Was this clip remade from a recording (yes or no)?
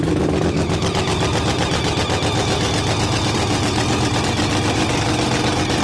no